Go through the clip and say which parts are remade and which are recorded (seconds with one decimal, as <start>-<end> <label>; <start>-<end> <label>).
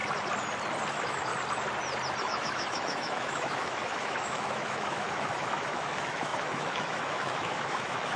0.0-0.9 recorded; 0.9-1.3 remade; 1.3-2.2 recorded; 2.2-8.2 remade